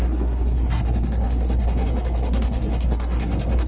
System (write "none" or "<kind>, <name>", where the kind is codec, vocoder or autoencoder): codec, SNAC